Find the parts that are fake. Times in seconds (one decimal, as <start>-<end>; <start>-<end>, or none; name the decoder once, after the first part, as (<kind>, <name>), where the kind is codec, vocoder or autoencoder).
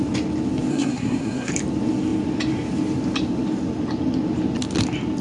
0.7-1.5 (codec, SNAC)